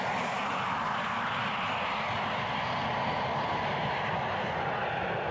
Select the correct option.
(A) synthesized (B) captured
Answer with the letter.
B